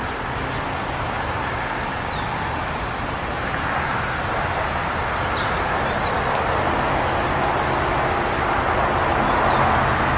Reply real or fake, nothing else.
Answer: real